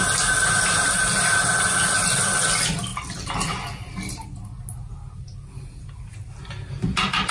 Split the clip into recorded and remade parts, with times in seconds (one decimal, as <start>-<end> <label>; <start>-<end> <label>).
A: 0.0-7.3 recorded